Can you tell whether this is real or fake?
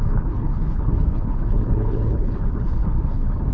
fake